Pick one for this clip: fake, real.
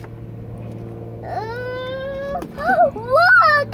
real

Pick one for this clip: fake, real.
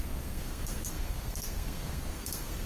fake